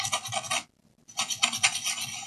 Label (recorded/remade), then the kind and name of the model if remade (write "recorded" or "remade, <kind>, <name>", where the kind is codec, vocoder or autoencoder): recorded